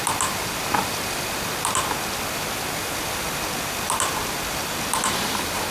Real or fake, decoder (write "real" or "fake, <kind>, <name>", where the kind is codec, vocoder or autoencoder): real